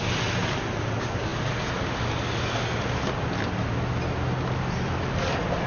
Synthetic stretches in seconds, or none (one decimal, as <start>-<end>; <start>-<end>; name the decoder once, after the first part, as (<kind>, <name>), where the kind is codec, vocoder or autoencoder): none